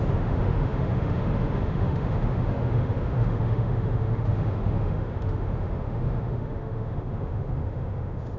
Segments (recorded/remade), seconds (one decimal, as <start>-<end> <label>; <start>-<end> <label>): 0.0-8.4 remade